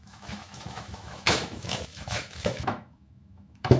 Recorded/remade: remade